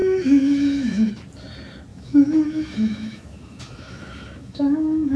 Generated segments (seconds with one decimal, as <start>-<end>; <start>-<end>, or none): 0.0-1.1; 1.9-5.2